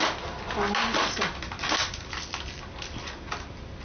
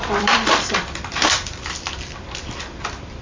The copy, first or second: second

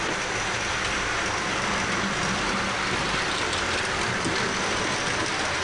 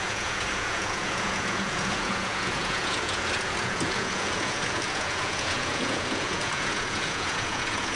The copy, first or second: second